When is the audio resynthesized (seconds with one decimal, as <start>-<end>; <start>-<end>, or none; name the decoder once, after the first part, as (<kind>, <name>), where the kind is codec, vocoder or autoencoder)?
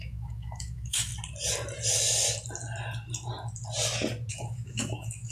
0.0-1.1 (autoencoder, DAC-VAE); 4.3-5.3